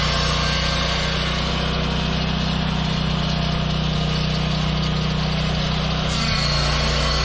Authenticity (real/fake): real